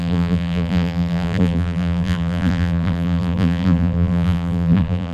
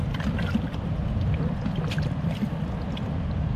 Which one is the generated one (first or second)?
first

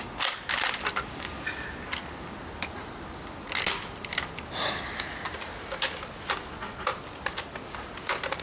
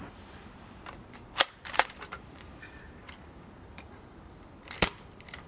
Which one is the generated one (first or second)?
second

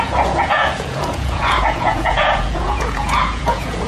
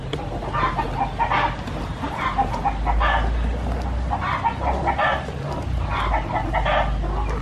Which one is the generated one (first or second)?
first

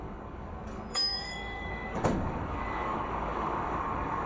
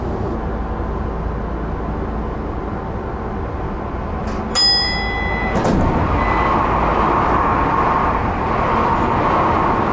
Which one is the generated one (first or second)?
first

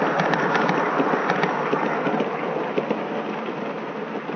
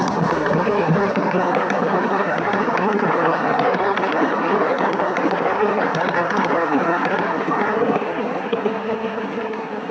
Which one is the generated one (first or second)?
second